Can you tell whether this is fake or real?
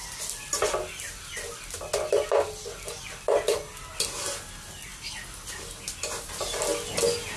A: real